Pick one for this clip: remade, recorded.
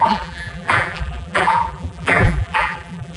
remade